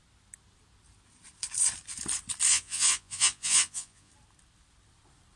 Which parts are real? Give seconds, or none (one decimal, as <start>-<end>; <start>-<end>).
0.0-2.5; 4.1-5.4